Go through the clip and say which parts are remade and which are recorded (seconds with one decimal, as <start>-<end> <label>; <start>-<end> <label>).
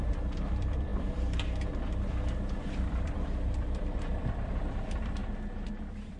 0.0-5.2 remade; 5.2-5.8 recorded; 5.8-6.2 remade